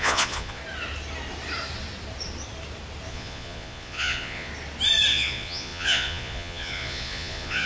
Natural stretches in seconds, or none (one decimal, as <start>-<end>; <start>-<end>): 0.6-3.1; 4.5-5.1